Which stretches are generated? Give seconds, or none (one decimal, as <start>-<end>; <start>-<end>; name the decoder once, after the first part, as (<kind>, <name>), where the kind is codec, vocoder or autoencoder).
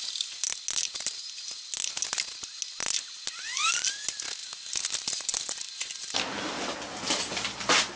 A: none